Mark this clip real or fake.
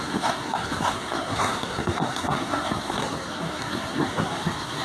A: fake